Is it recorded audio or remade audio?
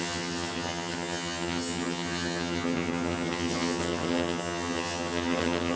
remade